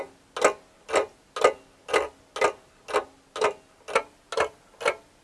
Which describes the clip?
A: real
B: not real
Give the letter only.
A